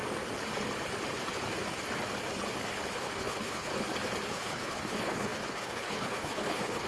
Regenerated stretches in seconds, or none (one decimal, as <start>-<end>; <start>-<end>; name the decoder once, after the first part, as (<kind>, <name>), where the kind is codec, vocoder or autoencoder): 2.9-3.7 (codec, HILCodec); 4.3-6.9